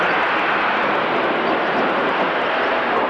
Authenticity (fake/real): real